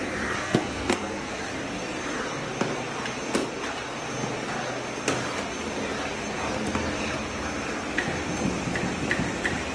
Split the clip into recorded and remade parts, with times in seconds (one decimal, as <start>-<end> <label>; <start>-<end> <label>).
0.0-0.4 recorded; 0.4-1.3 remade; 1.3-9.7 recorded